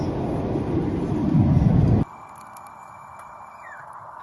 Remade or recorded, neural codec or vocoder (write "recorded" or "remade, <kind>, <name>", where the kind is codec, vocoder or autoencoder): recorded